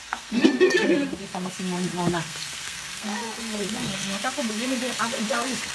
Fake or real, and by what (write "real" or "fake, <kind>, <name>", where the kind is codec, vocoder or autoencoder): fake, codec, SNAC